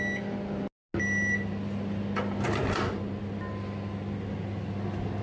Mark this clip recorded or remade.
recorded